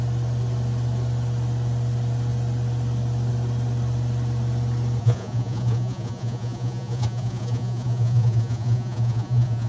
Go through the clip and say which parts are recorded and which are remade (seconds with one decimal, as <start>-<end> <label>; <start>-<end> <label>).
0.0-5.0 recorded; 5.0-9.7 remade

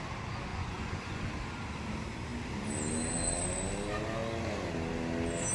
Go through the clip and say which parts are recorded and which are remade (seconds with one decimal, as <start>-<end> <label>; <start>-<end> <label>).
0.0-0.5 recorded; 0.5-1.3 remade; 1.3-5.5 recorded